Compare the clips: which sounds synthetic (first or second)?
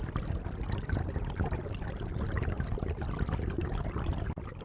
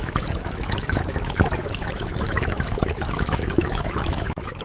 second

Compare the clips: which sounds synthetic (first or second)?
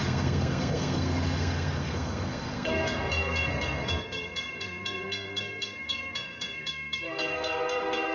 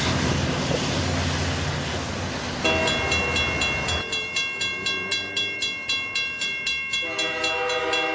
first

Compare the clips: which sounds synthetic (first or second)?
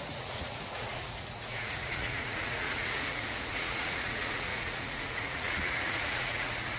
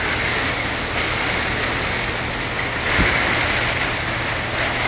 first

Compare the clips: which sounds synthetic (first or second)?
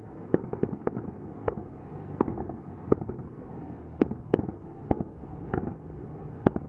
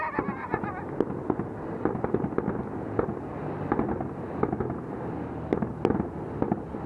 first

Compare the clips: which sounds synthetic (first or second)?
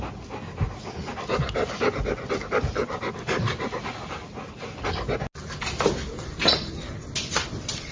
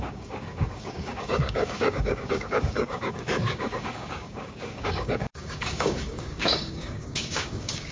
second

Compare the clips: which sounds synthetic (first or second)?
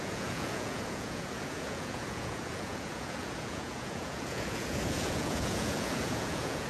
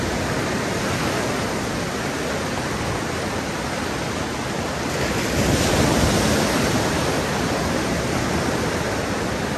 first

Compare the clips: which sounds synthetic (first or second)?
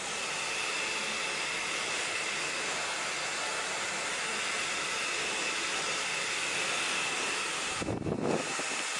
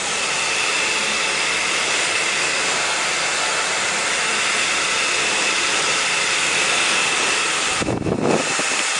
second